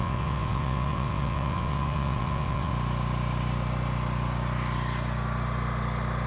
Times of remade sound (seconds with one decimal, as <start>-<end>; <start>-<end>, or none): 0.0-2.7

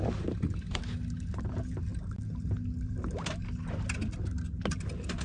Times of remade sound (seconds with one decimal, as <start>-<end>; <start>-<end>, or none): none